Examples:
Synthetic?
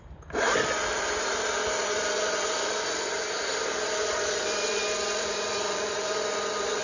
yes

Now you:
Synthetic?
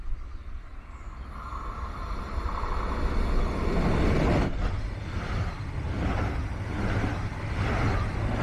no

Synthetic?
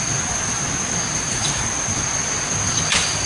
no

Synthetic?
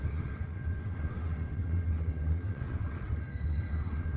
yes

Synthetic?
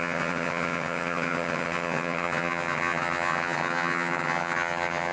yes